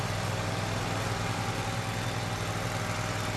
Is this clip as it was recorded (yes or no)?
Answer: yes